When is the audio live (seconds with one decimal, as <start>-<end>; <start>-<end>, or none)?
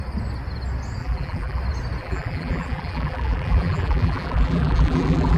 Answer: 0.0-1.0; 1.6-2.0